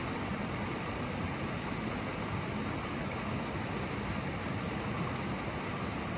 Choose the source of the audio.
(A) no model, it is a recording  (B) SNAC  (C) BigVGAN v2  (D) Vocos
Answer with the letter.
A